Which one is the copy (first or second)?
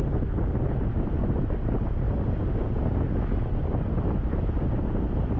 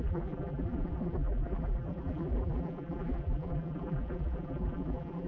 second